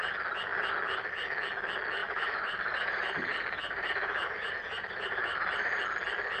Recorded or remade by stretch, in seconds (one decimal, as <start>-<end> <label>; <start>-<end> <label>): 0.0-2.0 recorded; 2.0-5.8 remade; 5.8-6.4 recorded